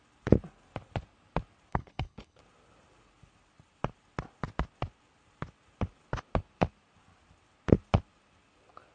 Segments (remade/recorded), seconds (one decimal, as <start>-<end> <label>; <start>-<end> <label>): 0.0-1.7 recorded; 1.7-2.4 remade; 2.4-8.9 recorded